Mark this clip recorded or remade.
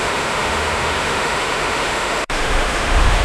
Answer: remade